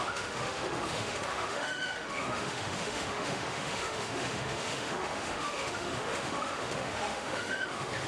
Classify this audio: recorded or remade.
remade